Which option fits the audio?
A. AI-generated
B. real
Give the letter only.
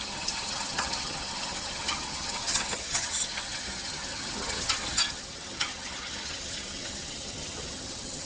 A